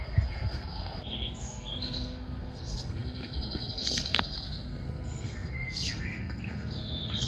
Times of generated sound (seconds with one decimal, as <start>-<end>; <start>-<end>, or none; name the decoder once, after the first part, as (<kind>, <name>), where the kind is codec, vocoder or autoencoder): 0.0-7.3 (codec, SNAC)